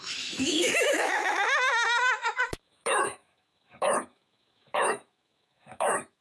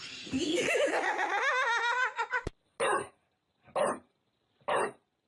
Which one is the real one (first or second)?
second